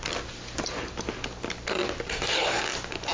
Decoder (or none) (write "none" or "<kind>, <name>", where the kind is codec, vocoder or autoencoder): none